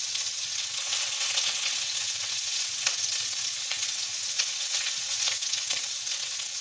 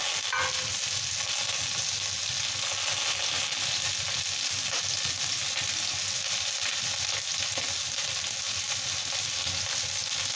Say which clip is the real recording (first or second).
second